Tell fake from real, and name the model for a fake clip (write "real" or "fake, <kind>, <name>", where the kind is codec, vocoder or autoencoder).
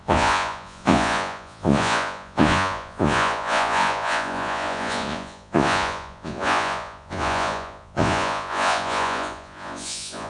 fake, vocoder, Vocos